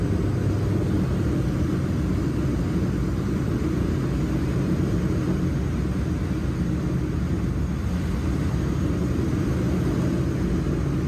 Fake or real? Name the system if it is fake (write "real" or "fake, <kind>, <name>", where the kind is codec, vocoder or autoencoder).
real